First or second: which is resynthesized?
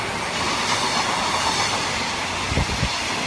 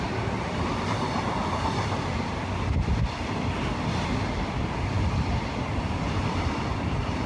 second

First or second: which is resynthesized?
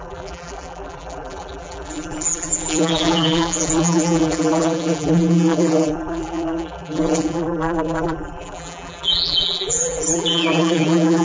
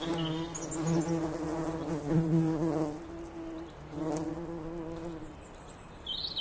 first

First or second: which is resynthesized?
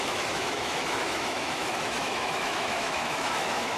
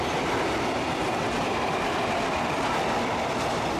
first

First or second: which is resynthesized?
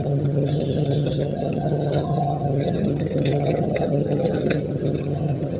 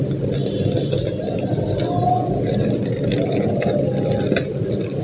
first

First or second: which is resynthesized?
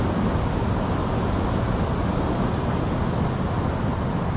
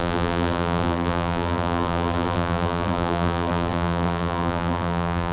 second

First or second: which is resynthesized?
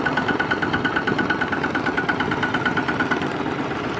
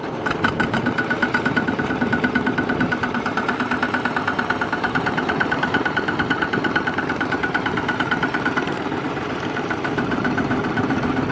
second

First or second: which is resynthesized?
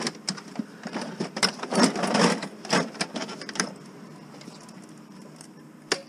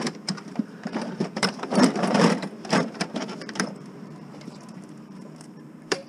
second